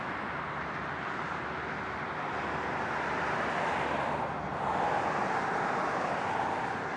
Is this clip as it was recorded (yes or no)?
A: yes